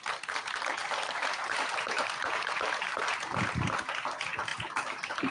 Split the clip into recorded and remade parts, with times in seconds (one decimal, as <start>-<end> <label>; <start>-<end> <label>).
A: 0.0-0.8 recorded; 0.8-4.0 remade; 4.0-4.5 recorded; 4.5-5.3 remade